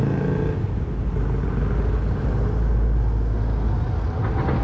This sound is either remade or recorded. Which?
recorded